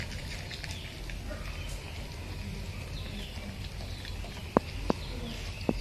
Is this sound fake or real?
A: real